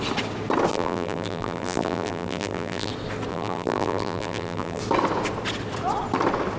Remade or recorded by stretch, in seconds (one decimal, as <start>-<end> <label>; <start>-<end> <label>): 0.0-0.7 recorded; 0.7-2.9 remade; 2.9-3.3 recorded; 3.3-4.8 remade; 4.8-6.6 recorded